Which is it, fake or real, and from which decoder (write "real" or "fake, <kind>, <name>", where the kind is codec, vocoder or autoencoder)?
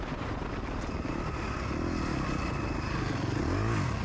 real